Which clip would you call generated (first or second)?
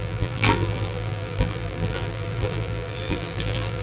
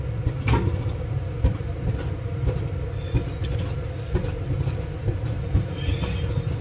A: first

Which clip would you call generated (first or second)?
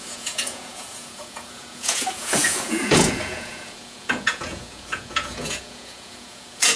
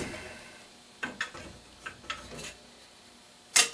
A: first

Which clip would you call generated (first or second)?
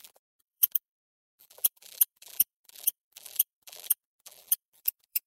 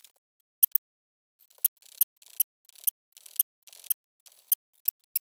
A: first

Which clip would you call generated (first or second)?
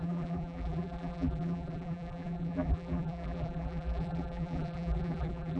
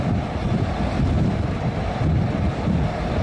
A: first